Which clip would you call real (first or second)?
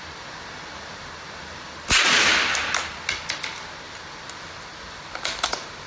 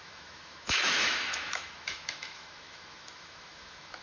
first